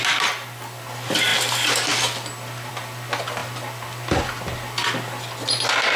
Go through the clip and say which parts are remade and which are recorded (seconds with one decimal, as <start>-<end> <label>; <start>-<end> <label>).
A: 0.0-3.4 recorded; 3.4-6.0 remade